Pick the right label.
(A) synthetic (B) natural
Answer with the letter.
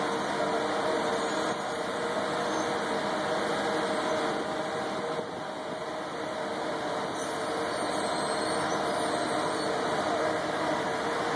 B